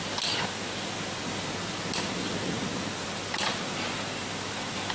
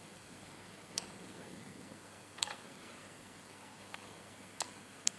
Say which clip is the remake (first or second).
second